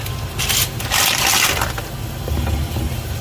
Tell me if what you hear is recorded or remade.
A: recorded